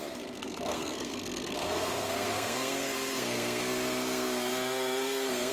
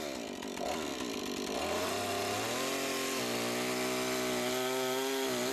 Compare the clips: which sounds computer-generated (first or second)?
first